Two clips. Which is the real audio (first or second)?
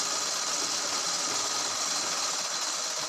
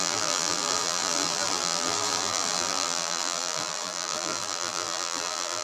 first